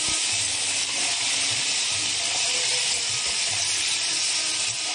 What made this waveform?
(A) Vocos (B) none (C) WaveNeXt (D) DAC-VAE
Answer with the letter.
B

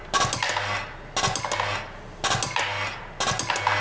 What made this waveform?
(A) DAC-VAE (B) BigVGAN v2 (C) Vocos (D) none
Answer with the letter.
D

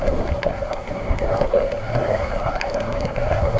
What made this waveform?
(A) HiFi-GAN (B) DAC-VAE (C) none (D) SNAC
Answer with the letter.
D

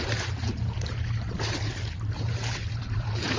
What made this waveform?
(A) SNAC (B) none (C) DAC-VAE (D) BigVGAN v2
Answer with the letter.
D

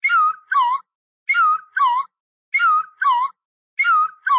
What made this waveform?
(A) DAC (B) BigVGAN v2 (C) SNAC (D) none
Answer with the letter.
D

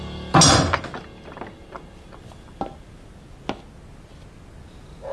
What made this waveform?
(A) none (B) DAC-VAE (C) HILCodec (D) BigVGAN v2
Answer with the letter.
A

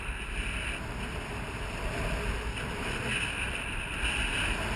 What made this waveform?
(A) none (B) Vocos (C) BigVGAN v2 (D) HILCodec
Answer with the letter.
A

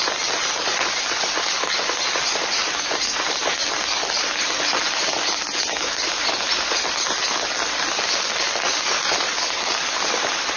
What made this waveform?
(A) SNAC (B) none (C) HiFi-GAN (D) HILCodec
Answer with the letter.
B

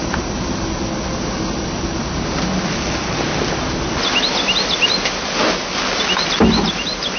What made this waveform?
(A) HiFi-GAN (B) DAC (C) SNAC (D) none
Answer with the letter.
D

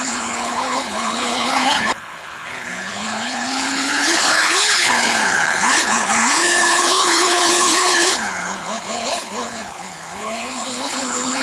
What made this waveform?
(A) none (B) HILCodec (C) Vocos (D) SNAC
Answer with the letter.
B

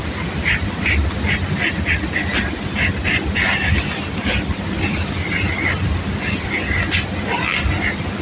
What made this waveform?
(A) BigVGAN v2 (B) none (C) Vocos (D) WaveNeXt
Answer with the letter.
B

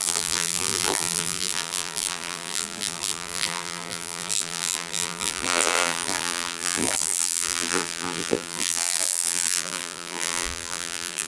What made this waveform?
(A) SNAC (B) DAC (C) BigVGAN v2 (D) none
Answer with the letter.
C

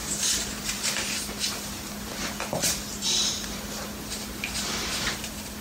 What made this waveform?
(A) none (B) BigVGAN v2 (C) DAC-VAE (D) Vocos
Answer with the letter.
B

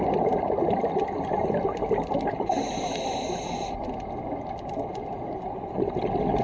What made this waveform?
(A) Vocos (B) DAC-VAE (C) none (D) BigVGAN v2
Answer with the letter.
C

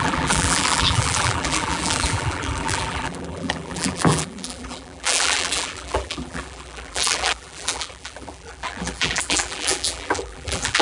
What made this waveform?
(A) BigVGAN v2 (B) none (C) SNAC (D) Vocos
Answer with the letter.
A